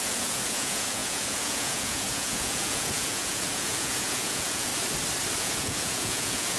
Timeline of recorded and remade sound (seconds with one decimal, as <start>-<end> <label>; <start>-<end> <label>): 0.0-4.7 remade; 4.7-5.4 recorded; 5.4-6.6 remade